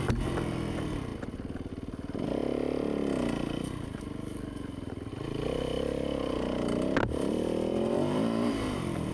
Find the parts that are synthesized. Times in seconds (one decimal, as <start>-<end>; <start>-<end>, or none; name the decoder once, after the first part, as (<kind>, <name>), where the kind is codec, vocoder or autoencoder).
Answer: 7.7-9.1 (vocoder, BigVGAN v2)